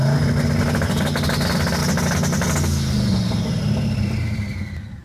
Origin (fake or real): real